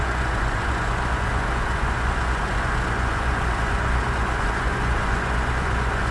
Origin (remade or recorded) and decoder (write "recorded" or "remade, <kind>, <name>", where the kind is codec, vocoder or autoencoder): remade, vocoder, Vocos